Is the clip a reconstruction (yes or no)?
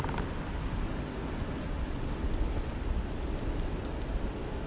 no